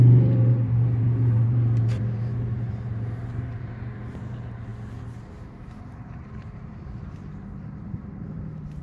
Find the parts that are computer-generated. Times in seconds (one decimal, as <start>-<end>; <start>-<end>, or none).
0.0-4.7; 5.3-8.8